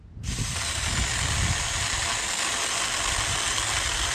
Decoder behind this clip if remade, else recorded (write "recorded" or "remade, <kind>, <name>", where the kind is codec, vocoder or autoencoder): recorded